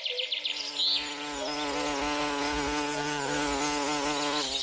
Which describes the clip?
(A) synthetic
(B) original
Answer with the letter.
B